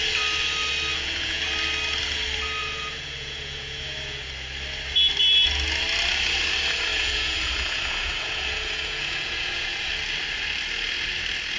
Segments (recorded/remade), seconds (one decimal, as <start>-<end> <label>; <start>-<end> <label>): 0.0-0.9 recorded; 0.9-1.5 remade; 1.5-2.6 recorded; 2.6-4.3 remade; 4.3-6.9 recorded; 6.9-9.9 remade; 9.9-11.6 recorded